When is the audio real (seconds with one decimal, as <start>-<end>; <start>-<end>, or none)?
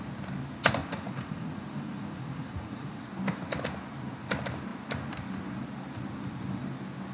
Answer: 0.0-0.8; 3.0-7.1